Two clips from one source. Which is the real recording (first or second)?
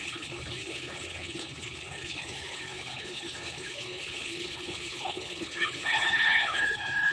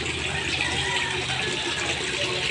second